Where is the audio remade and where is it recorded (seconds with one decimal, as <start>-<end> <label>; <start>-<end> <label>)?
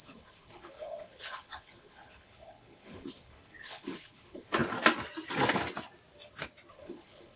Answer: 0.0-4.6 remade; 4.6-6.7 recorded; 6.7-7.4 remade